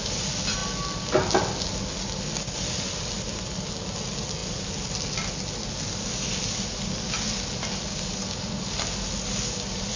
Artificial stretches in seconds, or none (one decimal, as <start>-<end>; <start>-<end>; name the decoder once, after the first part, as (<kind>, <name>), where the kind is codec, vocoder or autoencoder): none